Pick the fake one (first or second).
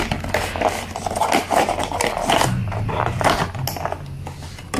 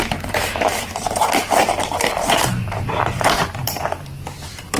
second